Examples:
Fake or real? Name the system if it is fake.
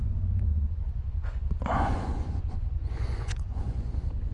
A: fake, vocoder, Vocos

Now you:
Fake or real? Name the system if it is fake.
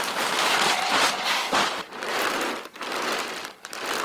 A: real